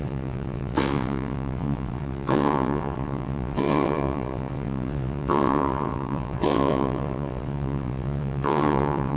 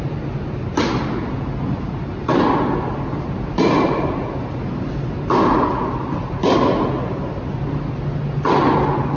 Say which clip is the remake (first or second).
first